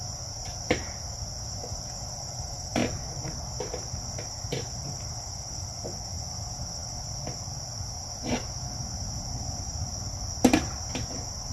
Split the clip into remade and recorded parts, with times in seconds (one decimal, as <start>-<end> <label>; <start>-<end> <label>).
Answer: 0.0-11.5 recorded